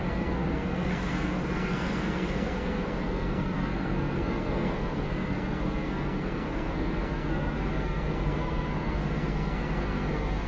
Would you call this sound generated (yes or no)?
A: yes